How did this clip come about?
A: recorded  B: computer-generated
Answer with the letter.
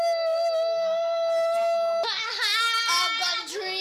A